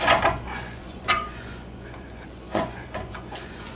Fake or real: fake